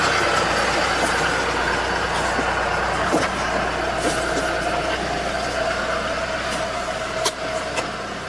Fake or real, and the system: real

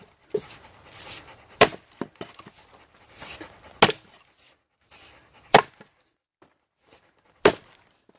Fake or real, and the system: real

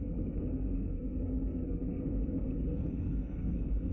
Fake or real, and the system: fake, codec, SNAC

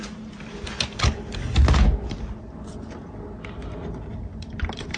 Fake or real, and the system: real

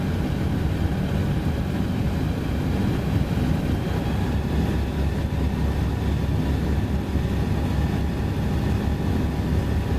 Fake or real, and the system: real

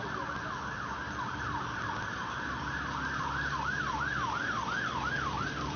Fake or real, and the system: real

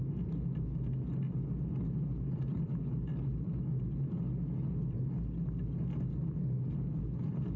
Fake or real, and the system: real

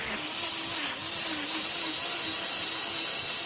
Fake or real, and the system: real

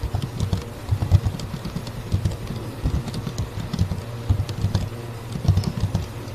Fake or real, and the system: real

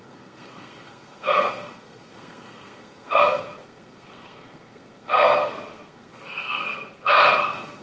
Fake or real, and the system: fake, codec, SNAC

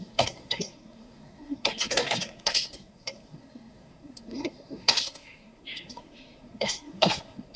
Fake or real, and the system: fake, codec, SNAC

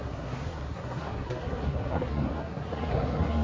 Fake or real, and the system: fake, codec, SNAC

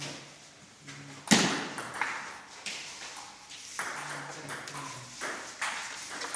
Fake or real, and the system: real